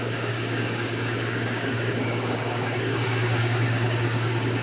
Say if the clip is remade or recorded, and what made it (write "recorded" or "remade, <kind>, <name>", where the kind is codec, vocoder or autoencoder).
remade, codec, DAC